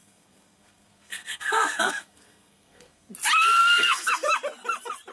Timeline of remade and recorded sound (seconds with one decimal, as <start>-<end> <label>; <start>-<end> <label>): 0.0-3.1 remade; 3.1-3.6 recorded; 3.6-4.1 remade; 4.1-5.1 recorded